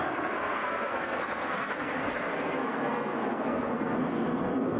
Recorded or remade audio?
remade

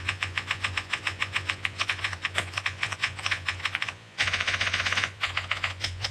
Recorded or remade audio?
remade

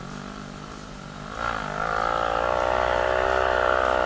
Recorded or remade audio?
recorded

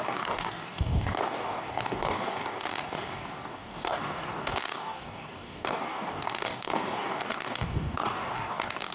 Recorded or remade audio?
remade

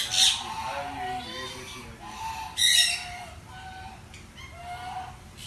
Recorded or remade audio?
recorded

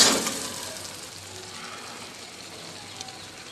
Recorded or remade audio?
recorded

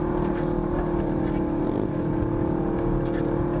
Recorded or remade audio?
recorded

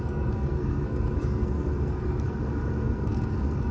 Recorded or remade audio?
remade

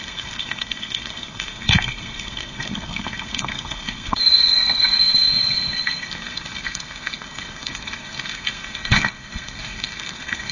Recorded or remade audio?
remade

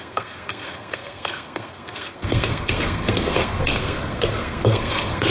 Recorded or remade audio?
remade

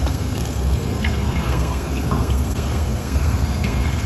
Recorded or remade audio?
remade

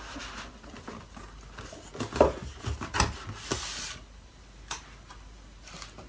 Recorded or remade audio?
recorded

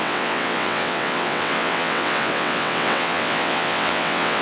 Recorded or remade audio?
remade